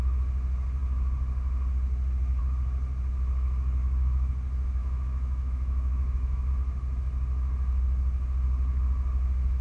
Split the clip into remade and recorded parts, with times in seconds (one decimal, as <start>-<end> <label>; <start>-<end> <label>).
0.0-3.8 recorded; 3.8-4.3 remade; 4.3-4.8 recorded; 4.8-6.5 remade; 6.5-9.6 recorded